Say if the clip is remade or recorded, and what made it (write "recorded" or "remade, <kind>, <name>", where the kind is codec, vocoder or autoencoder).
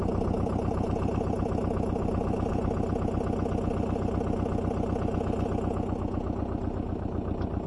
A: recorded